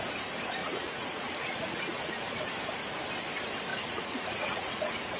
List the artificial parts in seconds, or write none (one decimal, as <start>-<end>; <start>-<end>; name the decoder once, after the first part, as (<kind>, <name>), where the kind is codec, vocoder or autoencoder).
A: 0.6-2.4 (vocoder, Vocos); 3.7-5.2